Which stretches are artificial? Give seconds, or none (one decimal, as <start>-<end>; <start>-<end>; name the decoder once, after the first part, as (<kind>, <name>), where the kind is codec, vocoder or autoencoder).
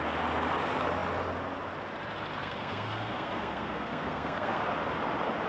2.4-4.6 (codec, SNAC)